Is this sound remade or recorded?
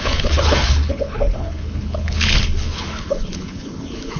remade